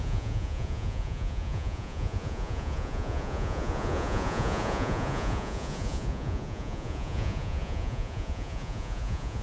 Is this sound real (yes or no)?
no